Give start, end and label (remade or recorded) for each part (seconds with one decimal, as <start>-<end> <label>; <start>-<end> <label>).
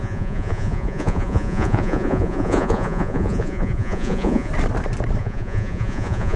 0.0-4.5 remade; 4.5-5.2 recorded; 5.2-6.4 remade